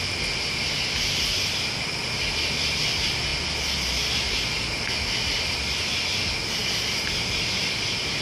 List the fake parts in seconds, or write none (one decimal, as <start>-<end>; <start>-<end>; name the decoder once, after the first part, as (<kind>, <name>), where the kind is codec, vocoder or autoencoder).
none